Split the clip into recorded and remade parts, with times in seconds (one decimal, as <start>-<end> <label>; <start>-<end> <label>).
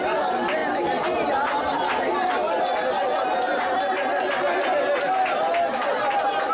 0.0-6.5 recorded